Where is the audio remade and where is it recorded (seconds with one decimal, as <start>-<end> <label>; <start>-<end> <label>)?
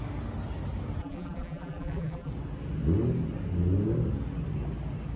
0.0-1.0 recorded; 1.0-2.3 remade; 2.3-5.2 recorded